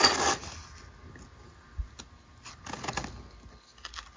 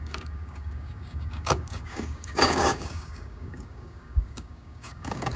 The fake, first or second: second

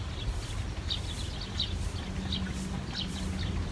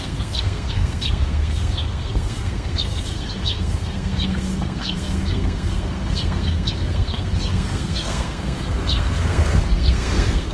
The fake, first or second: second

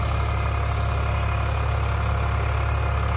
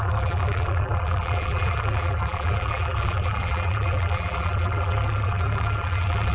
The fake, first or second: second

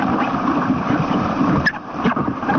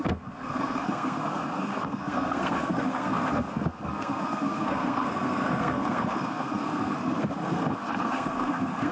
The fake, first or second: second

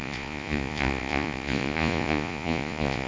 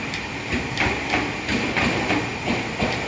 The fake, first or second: first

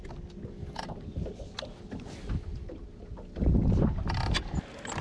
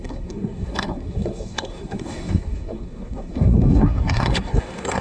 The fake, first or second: second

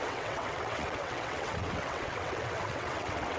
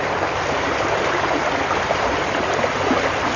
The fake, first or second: first